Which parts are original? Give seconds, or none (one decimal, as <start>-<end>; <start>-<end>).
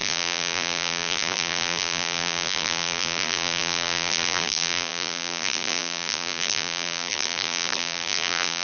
none